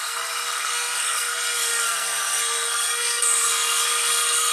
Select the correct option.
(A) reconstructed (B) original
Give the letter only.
A